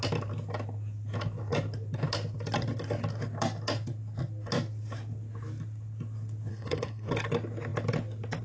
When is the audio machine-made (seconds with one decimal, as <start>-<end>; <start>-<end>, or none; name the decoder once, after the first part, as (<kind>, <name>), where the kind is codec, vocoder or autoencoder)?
6.5-7.1 (codec, SNAC)

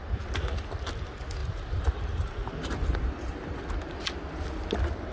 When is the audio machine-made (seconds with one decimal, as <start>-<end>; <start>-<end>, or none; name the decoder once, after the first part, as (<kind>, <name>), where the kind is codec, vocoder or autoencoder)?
1.4-3.7 (vocoder, BigVGAN v2)